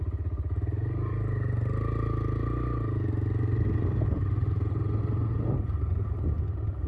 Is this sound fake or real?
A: real